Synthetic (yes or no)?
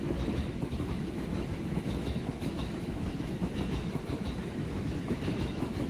yes